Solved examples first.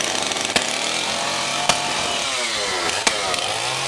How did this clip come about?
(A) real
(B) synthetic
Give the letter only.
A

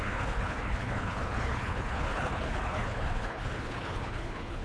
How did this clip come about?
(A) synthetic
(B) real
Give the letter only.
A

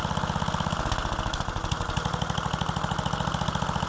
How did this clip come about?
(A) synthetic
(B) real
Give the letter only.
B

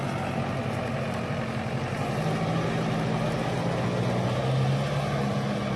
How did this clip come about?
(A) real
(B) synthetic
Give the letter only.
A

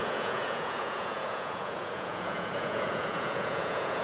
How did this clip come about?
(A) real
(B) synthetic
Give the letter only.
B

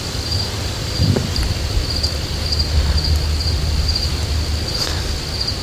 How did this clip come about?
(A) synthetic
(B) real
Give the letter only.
B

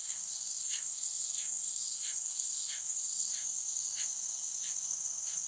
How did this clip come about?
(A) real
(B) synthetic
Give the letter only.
B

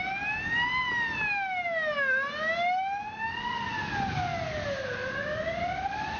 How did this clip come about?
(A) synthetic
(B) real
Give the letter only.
B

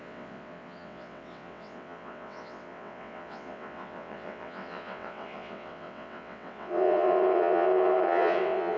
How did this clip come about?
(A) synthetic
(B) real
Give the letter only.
A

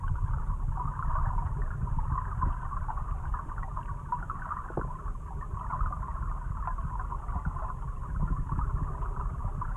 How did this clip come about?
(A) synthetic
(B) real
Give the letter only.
B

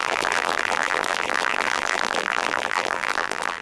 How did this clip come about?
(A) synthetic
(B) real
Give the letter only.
A